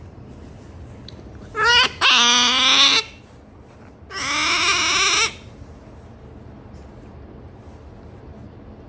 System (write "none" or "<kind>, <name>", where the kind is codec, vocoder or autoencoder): none